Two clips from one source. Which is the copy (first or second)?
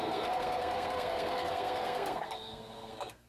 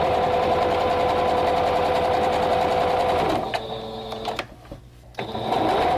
first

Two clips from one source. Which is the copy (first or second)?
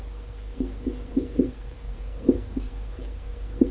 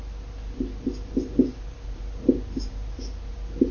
first